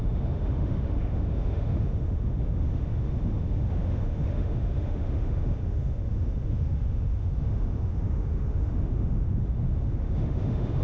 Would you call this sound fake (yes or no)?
yes